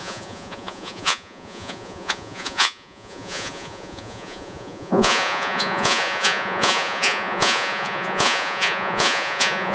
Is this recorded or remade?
remade